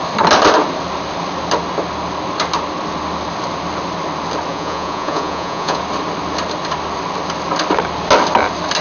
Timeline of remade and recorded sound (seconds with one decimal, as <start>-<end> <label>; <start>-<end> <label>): 0.0-4.5 recorded; 4.5-5.8 remade; 5.8-8.8 recorded